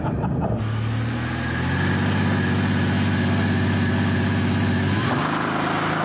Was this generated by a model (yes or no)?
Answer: no